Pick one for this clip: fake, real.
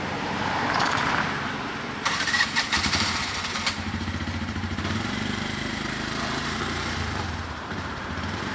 fake